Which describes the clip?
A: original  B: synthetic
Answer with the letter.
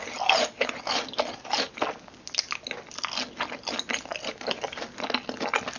A